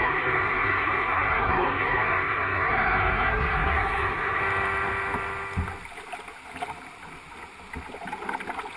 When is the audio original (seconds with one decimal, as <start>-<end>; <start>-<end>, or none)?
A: 4.4-8.8